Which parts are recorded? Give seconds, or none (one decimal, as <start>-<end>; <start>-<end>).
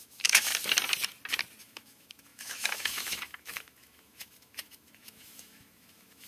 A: 0.5-1.6